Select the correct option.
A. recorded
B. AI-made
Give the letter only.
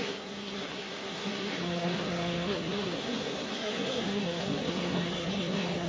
B